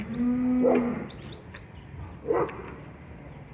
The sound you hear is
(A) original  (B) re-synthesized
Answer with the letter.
A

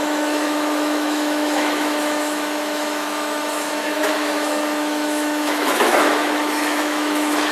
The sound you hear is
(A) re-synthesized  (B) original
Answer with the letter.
A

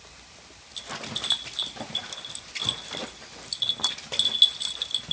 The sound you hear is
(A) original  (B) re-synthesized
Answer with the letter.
A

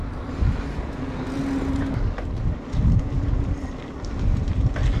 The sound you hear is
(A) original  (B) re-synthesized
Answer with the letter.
A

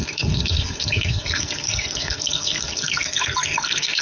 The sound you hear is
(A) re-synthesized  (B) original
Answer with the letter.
A